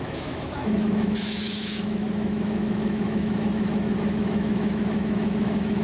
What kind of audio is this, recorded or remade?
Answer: remade